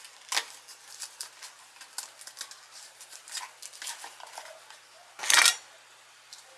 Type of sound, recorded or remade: recorded